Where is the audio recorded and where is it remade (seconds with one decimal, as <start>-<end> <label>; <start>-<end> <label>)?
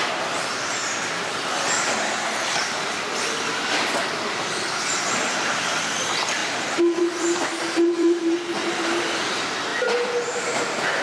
0.0-0.8 remade; 0.8-4.8 recorded; 4.8-11.0 remade